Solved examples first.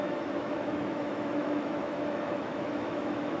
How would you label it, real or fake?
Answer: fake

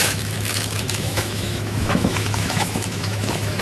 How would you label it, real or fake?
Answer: fake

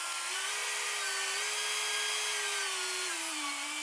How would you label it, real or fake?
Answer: real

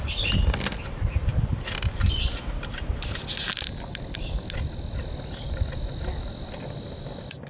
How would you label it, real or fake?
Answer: real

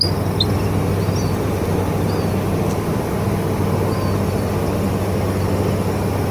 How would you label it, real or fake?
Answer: real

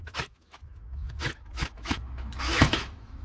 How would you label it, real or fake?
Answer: fake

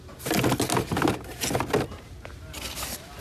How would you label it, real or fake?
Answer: real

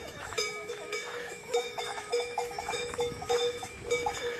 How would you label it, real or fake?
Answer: fake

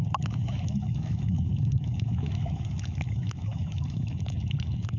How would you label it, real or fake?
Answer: fake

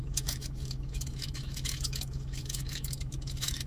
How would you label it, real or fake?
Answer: fake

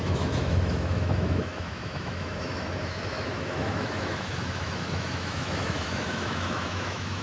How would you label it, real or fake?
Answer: fake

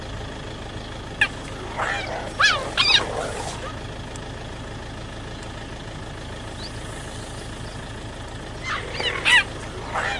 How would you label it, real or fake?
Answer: real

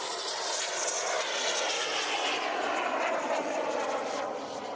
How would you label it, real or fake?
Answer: real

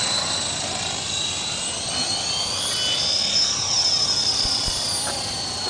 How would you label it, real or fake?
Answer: real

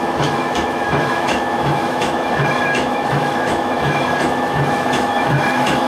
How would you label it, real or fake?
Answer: fake